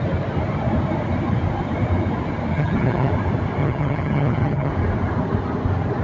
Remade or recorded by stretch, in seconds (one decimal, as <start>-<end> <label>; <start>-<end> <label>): 0.0-2.5 recorded; 2.5-3.1 remade; 3.1-3.6 recorded; 3.6-4.7 remade; 4.7-6.0 recorded